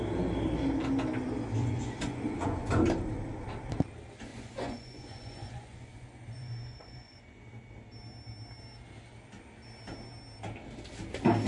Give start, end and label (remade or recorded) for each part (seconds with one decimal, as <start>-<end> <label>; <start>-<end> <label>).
0.0-1.6 recorded; 1.6-2.7 remade; 2.7-4.3 recorded; 4.3-7.5 remade; 7.5-11.5 recorded